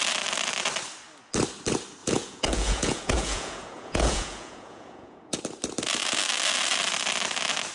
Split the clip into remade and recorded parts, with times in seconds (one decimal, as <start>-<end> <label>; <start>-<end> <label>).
0.0-2.0 recorded; 2.0-5.4 remade; 5.4-7.7 recorded